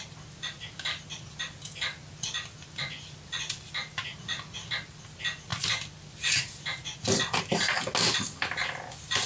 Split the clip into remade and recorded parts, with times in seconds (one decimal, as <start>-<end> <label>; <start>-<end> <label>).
0.0-9.3 recorded